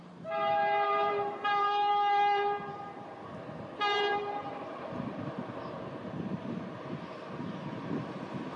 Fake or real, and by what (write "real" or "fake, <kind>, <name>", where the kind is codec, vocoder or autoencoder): fake, vocoder, BigVGAN v2